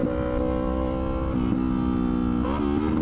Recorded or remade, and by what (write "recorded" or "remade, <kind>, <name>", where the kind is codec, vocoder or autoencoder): recorded